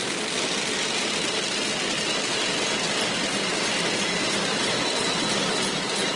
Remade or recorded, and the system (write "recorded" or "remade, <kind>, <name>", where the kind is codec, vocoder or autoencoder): recorded